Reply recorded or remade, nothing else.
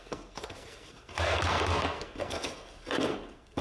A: remade